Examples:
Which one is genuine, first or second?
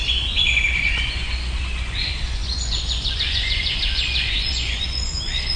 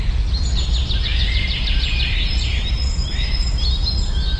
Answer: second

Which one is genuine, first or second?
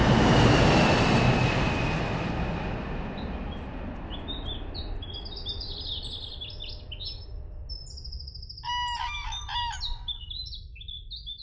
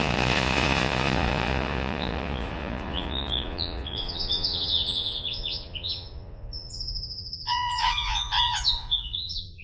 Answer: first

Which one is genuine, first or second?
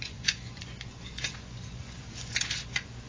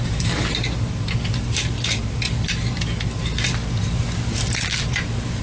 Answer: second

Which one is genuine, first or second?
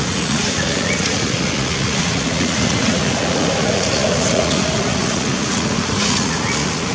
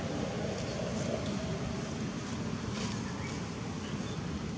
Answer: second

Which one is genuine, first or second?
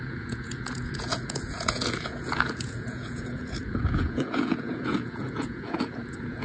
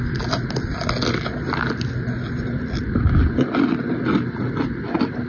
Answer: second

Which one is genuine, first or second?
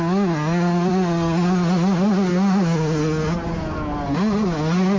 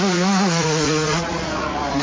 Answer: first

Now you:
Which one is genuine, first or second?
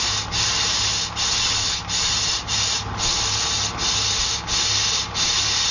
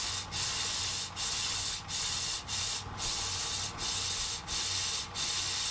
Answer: first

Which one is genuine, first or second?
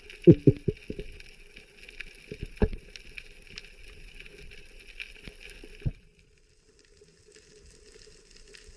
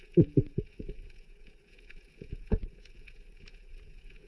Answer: first